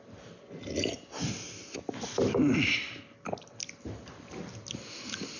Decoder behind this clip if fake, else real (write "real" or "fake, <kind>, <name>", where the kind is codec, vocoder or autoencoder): real